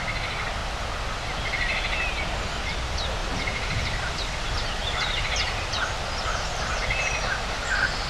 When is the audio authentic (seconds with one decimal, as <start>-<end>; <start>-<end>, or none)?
0.0-3.2; 6.7-8.1